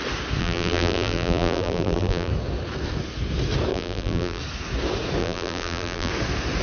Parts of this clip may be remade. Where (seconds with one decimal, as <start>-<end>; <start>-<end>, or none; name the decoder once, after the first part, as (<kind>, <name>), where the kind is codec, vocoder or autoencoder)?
0.4-2.3 (vocoder, BigVGAN v2); 3.7-4.4; 5.2-6.1